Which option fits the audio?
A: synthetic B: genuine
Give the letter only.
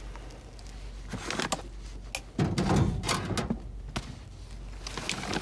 B